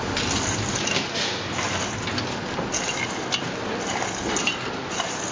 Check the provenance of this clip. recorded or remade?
recorded